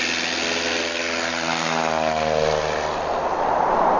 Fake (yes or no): no